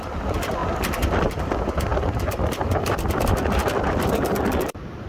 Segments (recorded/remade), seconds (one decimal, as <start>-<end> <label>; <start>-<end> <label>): 0.0-0.6 recorded; 0.6-1.4 remade; 1.4-1.9 recorded; 1.9-5.1 remade